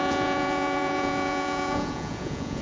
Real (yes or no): no